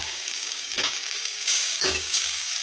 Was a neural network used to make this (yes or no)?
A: yes